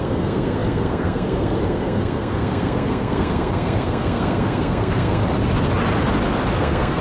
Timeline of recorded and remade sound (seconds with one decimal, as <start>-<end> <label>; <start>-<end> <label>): 0.0-5.2 remade; 5.2-6.6 recorded; 6.6-7.0 remade